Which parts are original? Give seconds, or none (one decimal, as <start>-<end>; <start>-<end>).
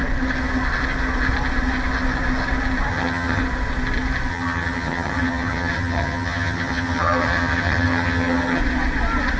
0.0-2.9; 3.4-4.3; 8.6-9.4